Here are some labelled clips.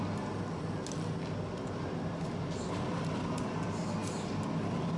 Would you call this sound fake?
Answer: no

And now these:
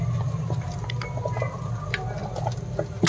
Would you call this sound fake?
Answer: no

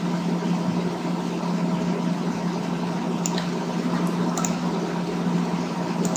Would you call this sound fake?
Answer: no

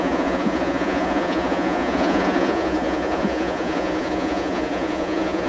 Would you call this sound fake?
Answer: yes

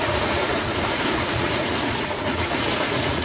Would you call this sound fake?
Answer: yes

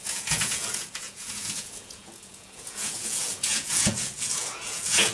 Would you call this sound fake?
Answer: yes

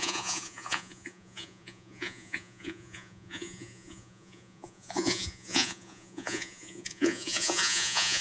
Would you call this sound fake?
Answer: yes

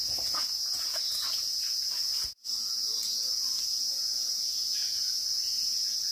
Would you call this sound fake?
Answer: yes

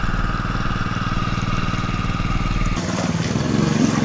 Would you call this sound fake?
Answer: no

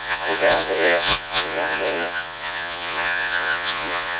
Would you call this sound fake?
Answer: yes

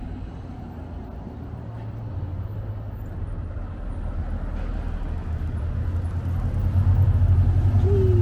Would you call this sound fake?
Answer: no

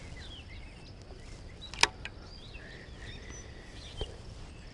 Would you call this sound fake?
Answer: no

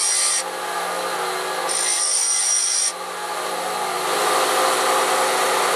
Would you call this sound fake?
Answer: no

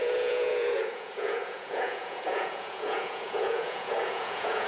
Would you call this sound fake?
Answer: yes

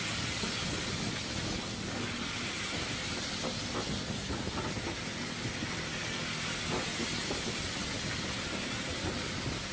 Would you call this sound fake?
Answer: no